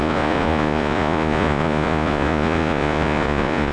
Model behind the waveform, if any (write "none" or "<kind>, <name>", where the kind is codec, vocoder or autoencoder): vocoder, Vocos